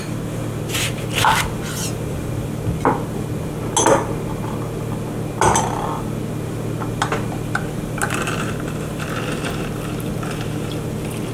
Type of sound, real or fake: real